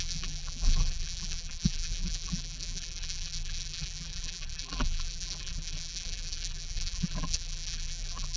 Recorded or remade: remade